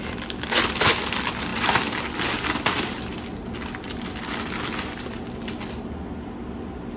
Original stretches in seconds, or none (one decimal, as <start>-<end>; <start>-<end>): 0.0-7.0